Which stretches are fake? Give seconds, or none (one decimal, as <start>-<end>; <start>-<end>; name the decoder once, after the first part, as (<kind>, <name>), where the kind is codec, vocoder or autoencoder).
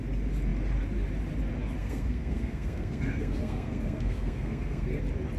1.8-5.0 (codec, SNAC)